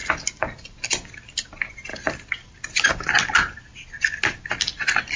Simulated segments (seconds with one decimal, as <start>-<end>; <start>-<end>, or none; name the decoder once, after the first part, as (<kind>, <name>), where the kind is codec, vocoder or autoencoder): 1.9-2.9 (vocoder, BigVGAN v2)